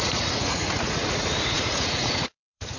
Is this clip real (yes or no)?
no